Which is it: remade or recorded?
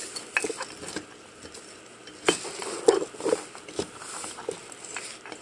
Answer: recorded